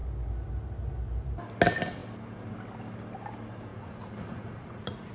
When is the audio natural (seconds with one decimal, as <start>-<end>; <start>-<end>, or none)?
0.0-3.7